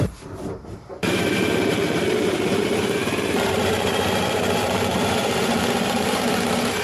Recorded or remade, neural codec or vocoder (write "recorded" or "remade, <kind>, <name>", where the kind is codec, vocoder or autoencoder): remade, vocoder, BigVGAN v2